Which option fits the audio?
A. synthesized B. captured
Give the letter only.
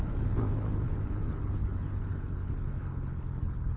A